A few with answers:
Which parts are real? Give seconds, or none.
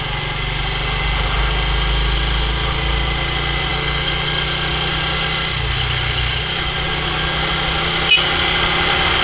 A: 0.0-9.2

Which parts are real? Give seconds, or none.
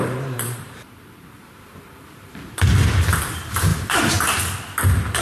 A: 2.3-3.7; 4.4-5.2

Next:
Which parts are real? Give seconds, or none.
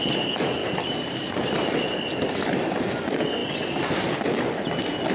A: 0.0-0.6; 2.8-5.1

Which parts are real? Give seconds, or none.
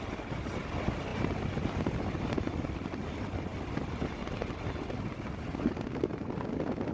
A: 0.0-1.1; 1.9-6.9